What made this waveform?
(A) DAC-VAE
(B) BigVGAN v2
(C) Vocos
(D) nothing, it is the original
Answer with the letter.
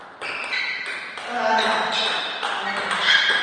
D